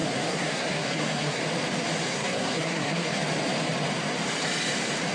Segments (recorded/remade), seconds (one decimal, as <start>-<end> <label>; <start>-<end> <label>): 0.0-1.4 remade; 1.4-2.1 recorded; 2.1-3.2 remade; 3.2-5.1 recorded